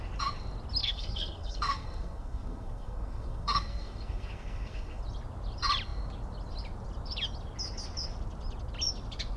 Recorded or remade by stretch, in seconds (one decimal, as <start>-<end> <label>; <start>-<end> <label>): 0.0-0.8 recorded; 0.8-5.0 remade; 5.0-9.4 recorded